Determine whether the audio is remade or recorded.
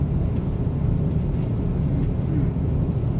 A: recorded